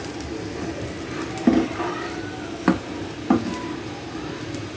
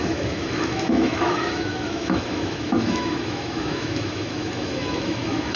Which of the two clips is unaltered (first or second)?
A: first